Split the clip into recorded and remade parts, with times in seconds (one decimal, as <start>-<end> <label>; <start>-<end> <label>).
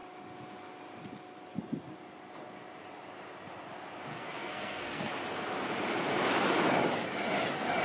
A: 0.0-4.1 recorded; 4.1-5.1 remade; 5.1-7.8 recorded